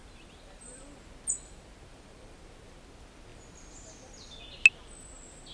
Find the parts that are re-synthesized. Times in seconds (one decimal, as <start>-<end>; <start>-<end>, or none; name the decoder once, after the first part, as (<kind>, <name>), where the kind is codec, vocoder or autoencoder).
0.0-0.8 (vocoder, BigVGAN v2); 1.9-2.4; 3.3-4.4